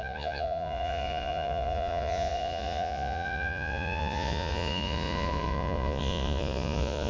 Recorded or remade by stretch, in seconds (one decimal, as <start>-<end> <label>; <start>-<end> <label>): 0.0-7.1 remade